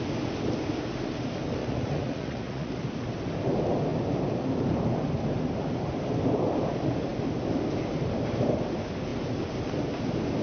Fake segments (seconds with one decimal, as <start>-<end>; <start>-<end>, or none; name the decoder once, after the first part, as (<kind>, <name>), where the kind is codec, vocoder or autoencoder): 1.6-2.7 (vocoder, Vocos)